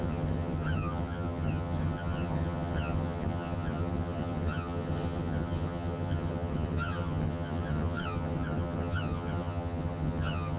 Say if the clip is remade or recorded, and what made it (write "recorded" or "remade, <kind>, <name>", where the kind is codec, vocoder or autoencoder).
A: remade, vocoder, HiFi-GAN